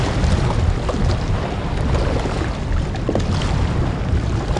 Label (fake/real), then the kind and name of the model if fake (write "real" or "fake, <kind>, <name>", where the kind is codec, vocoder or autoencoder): real